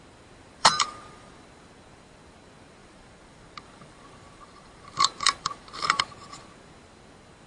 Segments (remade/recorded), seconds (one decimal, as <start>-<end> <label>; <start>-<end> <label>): 0.0-0.6 recorded; 0.6-1.4 remade; 1.4-2.8 recorded; 2.8-6.0 remade; 6.0-7.5 recorded